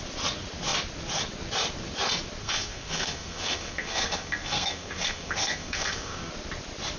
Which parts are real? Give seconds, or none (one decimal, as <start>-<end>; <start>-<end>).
0.0-2.4; 6.3-7.0